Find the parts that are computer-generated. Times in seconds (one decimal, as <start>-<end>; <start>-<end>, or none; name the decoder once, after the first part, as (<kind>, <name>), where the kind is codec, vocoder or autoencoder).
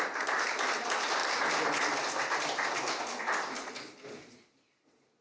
none